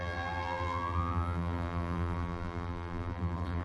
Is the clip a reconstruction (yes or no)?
yes